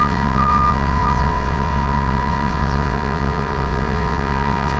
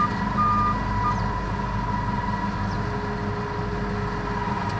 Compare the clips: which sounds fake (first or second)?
first